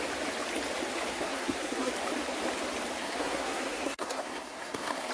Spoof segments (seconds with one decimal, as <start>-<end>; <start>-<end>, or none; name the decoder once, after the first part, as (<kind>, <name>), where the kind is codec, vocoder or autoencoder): 1.1-1.9 (codec, SNAC); 3.0-5.1